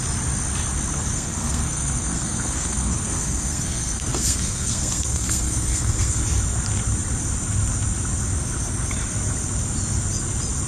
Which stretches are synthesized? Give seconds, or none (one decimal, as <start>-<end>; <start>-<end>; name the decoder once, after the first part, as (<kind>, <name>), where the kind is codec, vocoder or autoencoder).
1.1-6.2 (codec, SNAC)